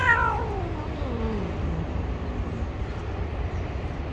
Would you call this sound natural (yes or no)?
yes